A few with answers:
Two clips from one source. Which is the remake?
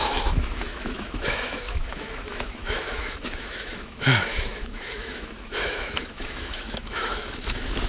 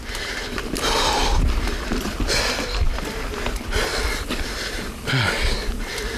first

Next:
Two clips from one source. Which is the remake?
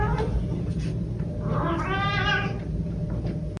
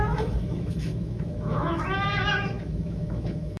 second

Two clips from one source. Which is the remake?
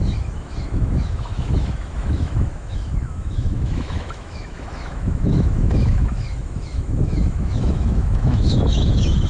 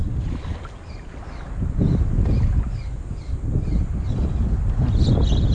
first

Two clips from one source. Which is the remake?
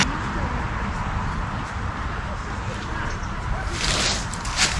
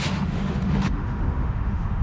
second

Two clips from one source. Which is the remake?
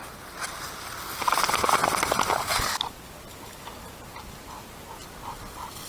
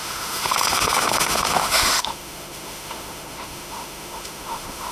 second